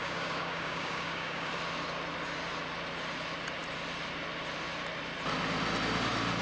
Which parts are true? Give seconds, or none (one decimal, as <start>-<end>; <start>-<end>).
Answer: 1.5-6.4